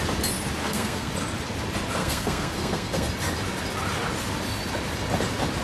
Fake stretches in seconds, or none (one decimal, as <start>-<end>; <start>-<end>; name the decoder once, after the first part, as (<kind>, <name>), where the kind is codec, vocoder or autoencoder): 0.6-1.1 (codec, SNAC); 2.0-3.1